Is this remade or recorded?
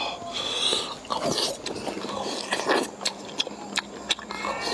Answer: recorded